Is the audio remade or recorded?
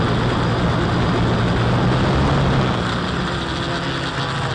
recorded